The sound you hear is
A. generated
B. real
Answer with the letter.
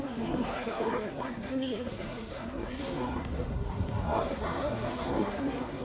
A